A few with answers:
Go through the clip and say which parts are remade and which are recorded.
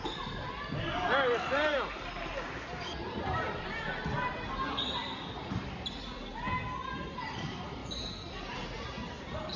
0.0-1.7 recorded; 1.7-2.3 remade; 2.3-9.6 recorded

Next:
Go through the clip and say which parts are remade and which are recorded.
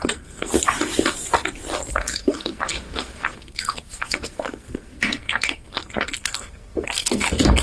0.0-0.5 remade; 0.5-1.9 recorded; 1.9-7.6 remade